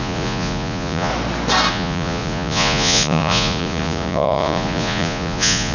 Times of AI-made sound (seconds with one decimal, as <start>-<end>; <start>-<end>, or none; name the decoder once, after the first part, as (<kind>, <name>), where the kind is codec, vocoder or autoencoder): 0.0-1.1 (vocoder, Vocos); 1.7-5.7